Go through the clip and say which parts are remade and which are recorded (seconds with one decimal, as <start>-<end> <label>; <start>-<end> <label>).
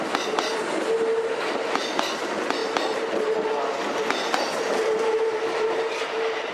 0.0-6.5 recorded